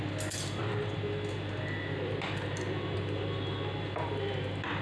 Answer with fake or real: real